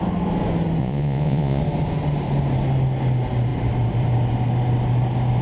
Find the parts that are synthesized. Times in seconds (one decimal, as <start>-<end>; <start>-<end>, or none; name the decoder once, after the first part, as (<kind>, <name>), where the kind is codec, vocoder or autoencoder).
0.8-1.6 (vocoder, Vocos)